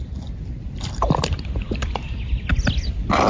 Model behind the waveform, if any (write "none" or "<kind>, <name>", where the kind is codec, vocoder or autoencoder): none